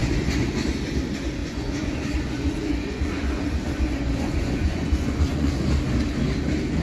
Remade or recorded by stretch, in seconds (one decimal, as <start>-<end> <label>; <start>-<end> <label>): 0.0-0.5 remade; 0.5-1.4 recorded; 1.4-5.5 remade; 5.5-6.8 recorded

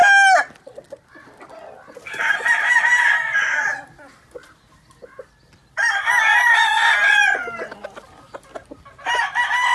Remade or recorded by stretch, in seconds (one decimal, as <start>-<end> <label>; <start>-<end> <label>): 0.0-9.7 recorded

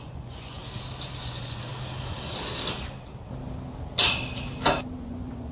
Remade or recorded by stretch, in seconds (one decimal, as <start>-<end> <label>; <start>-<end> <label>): 0.0-0.6 remade; 0.6-1.2 recorded; 1.2-1.7 remade; 1.7-5.0 recorded; 5.0-5.5 remade

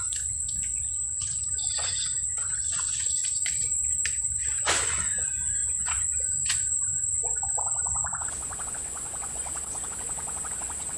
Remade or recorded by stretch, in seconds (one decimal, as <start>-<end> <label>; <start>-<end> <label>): 0.0-3.2 remade; 3.2-4.4 recorded; 4.4-11.0 remade

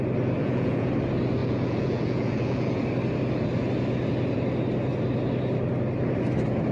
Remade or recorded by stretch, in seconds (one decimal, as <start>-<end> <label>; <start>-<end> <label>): 0.0-0.4 recorded; 0.4-0.9 remade; 0.9-1.4 recorded; 1.4-2.8 remade; 2.8-6.7 recorded